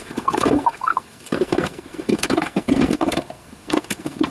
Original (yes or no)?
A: no